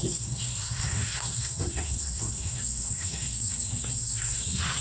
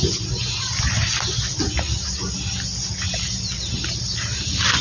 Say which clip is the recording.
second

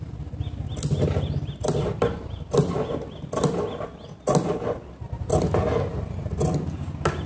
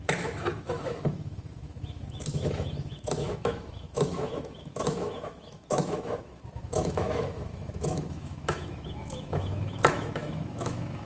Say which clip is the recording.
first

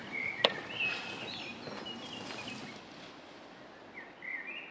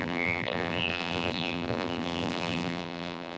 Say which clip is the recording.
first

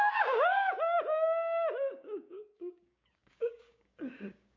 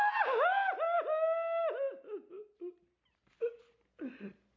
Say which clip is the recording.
second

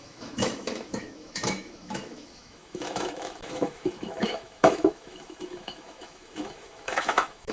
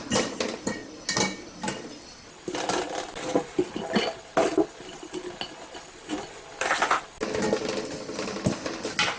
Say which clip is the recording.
second